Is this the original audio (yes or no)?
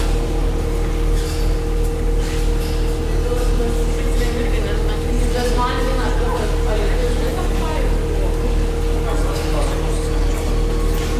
yes